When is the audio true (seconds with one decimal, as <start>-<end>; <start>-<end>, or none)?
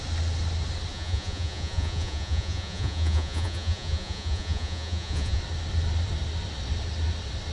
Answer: 0.0-0.9; 5.4-7.5